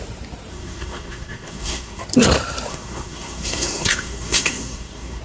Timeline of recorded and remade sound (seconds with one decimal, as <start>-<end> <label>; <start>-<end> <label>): 0.0-0.5 recorded; 0.5-2.0 remade; 2.0-2.7 recorded; 2.7-5.2 remade